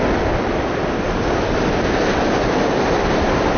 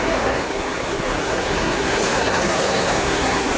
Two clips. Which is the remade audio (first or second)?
second